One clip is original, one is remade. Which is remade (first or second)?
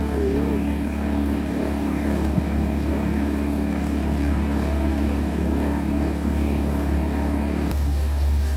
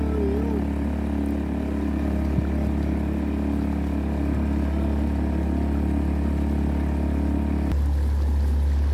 first